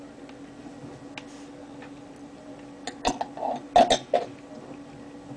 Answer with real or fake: real